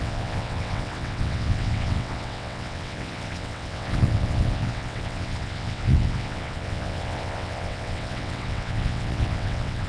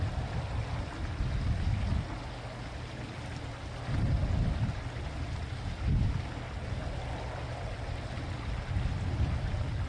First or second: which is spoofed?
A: first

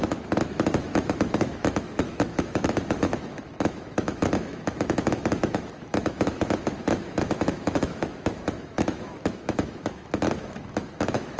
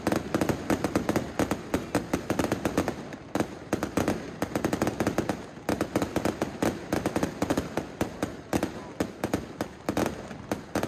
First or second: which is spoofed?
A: first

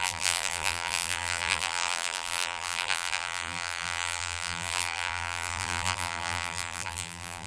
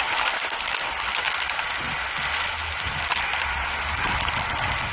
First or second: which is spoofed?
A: first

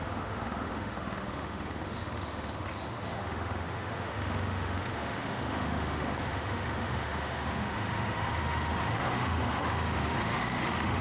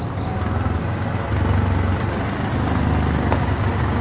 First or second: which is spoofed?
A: first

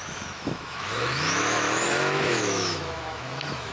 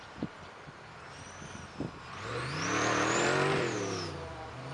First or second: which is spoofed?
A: first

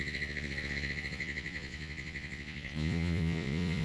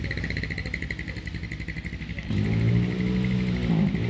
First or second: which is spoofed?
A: first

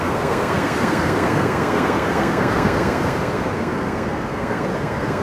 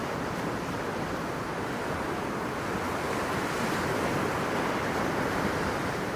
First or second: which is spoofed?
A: first